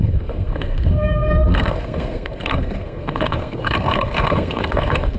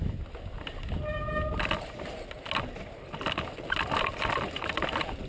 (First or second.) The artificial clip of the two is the first